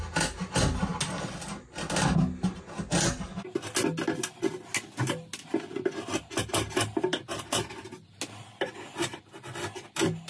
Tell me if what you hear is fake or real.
real